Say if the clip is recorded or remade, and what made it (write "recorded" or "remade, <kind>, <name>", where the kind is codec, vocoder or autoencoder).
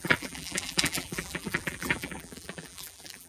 remade, vocoder, BigVGAN v2